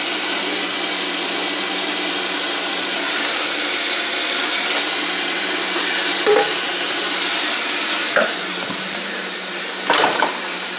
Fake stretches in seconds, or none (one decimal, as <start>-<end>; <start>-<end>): 0.0-0.4; 2.1-10.8